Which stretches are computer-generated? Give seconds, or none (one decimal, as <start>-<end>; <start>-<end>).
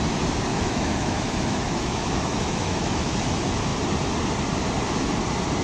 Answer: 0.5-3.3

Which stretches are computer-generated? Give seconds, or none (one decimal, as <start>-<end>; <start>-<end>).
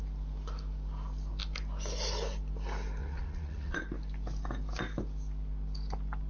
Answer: 3.0-3.8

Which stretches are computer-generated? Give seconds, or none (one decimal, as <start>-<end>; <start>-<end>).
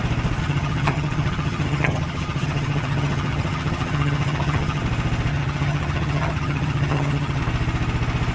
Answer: 0.4-4.8; 5.3-7.4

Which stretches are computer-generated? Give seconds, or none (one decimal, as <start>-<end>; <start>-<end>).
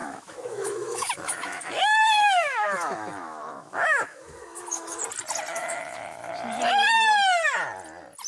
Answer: 0.0-5.0; 5.5-6.3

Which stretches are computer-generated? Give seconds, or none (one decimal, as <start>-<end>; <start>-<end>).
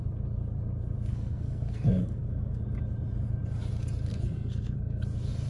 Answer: 1.1-2.6; 4.1-5.0